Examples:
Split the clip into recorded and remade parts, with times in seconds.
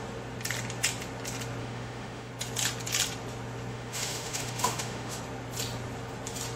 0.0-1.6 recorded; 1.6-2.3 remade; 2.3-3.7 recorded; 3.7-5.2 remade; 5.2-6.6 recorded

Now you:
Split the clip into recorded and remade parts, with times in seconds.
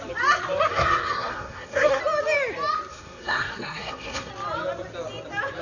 0.0-0.7 recorded; 0.7-2.0 remade; 2.0-2.9 recorded; 2.9-4.3 remade; 4.3-5.6 recorded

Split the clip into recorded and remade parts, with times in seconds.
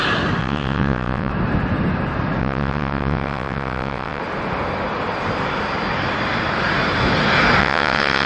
0.0-0.4 recorded; 0.4-1.3 remade; 1.3-2.4 recorded; 2.4-4.2 remade; 4.2-7.6 recorded; 7.6-8.3 remade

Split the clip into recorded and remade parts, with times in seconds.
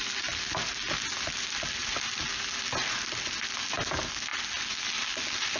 0.0-5.6 recorded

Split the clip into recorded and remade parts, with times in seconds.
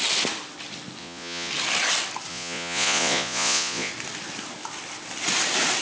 0.0-1.0 recorded; 1.0-1.5 remade; 1.5-2.3 recorded; 2.3-3.9 remade; 3.9-5.8 recorded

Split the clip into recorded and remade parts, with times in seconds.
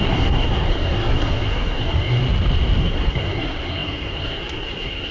0.0-2.2 remade; 2.2-2.8 recorded; 2.8-5.1 remade